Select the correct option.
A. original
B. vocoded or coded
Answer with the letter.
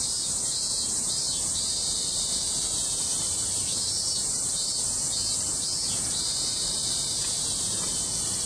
B